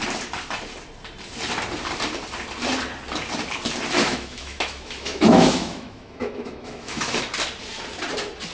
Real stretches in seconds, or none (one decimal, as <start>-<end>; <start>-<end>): 0.0-4.0; 7.2-8.5